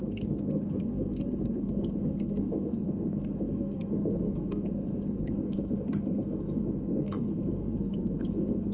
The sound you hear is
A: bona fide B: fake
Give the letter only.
B